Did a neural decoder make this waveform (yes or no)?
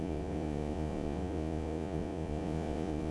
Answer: yes